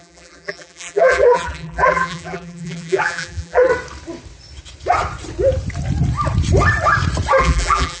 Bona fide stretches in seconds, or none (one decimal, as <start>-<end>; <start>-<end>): 3.7-7.4